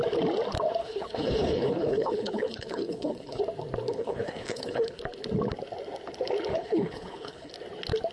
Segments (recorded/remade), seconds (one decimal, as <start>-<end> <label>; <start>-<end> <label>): 0.0-0.8 recorded; 0.8-3.4 remade; 3.4-3.9 recorded; 3.9-5.0 remade; 5.0-6.5 recorded; 6.5-7.5 remade; 7.5-8.1 recorded

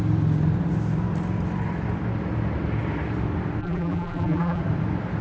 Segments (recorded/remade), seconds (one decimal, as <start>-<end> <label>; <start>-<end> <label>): 0.0-3.6 recorded; 3.6-4.6 remade; 4.6-5.2 recorded